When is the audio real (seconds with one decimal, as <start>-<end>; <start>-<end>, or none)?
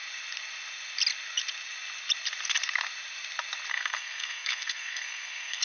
0.0-3.7